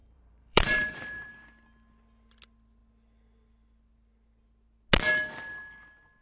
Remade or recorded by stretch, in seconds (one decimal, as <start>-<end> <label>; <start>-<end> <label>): 0.0-1.3 remade; 1.3-6.2 recorded